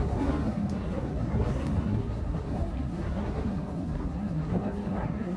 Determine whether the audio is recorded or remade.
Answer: remade